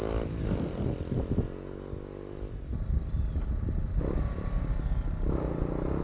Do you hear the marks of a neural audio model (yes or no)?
no